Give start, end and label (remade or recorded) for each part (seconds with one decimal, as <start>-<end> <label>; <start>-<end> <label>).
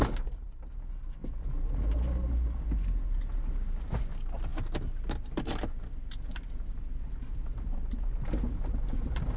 0.0-9.4 recorded